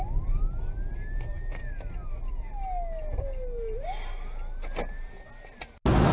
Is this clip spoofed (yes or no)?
no